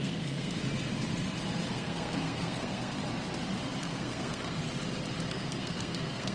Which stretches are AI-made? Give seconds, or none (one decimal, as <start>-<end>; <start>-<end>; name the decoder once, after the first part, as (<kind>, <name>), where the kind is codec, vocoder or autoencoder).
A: 0.0-0.6 (codec, SNAC); 1.7-3.0; 3.8-4.6; 5.3-6.3